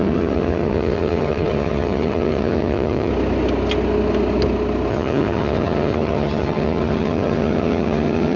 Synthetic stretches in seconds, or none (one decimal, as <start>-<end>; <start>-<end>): 0.0-3.1; 4.9-8.4

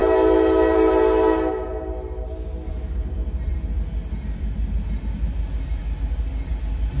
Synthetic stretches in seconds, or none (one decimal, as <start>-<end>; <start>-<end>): none